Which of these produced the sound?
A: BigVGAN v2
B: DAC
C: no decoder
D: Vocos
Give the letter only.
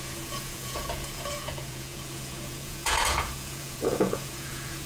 D